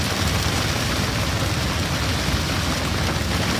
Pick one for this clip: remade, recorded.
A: remade